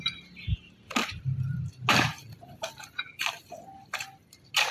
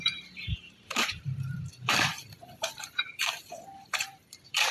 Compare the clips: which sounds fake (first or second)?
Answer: second